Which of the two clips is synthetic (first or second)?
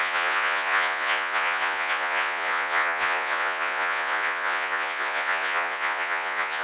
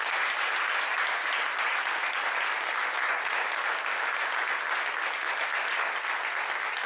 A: first